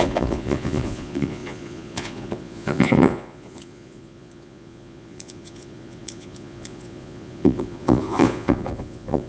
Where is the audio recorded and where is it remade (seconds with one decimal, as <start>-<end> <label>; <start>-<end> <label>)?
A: 0.0-9.3 remade